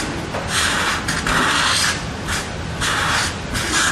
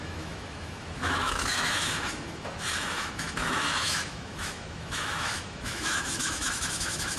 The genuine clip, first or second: first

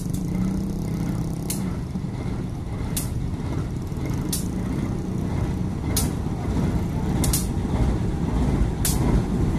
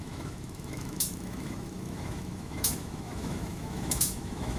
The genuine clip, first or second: first